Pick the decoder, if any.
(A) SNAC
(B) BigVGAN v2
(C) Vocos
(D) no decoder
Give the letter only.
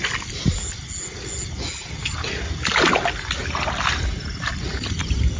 D